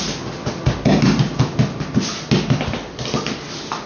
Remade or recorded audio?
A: recorded